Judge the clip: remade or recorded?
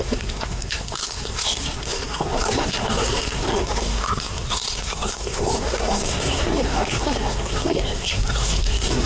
remade